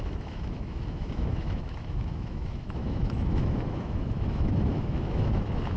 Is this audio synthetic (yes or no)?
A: yes